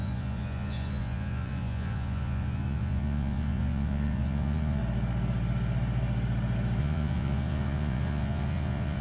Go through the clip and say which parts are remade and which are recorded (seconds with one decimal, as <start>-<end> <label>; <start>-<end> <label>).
0.0-4.8 remade; 4.8-6.8 recorded; 6.8-9.0 remade